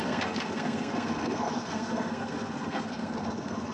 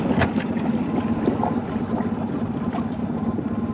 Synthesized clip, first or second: first